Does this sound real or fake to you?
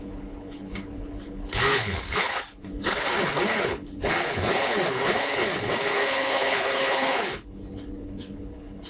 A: fake